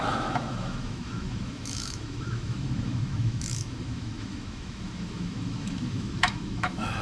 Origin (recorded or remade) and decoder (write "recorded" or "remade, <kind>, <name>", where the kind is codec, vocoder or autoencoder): remade, autoencoder, DAC-VAE